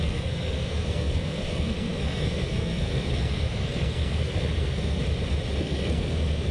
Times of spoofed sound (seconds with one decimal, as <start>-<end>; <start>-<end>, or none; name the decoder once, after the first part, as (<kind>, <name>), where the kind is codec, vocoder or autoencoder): 0.0-5.0 (codec, SNAC); 5.6-6.5